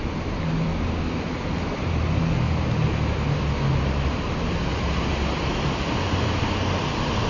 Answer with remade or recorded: recorded